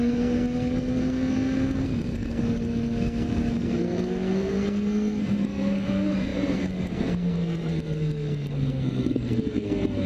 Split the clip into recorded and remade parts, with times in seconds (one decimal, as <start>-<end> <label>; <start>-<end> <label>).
0.0-10.1 remade

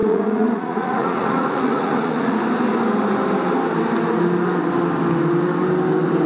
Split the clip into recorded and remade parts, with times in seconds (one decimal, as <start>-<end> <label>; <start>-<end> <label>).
0.0-2.4 remade; 2.4-6.3 recorded

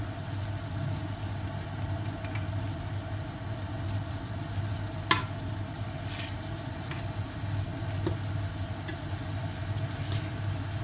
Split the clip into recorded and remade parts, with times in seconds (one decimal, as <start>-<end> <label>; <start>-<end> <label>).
0.0-10.8 recorded

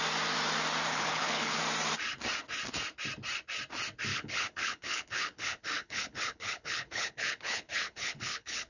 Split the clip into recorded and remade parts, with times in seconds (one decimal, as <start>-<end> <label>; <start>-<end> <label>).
0.0-0.9 recorded; 0.9-1.6 remade; 1.6-4.1 recorded; 4.1-8.7 remade

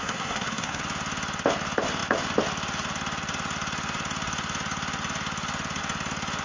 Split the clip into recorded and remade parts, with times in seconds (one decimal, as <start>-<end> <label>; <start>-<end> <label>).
0.0-0.8 remade; 0.8-6.4 recorded

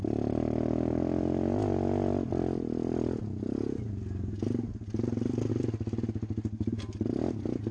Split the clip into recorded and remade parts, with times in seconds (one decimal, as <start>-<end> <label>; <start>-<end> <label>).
0.0-7.7 recorded

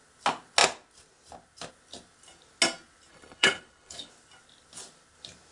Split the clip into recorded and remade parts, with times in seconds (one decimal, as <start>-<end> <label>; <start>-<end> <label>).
0.0-3.1 recorded; 3.1-4.1 remade; 4.1-5.5 recorded

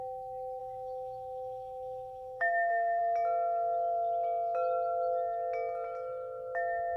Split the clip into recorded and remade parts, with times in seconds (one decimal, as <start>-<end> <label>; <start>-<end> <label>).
0.0-0.6 recorded; 0.6-3.0 remade; 3.0-7.0 recorded